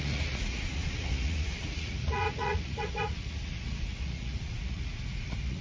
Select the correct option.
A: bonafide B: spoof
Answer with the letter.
B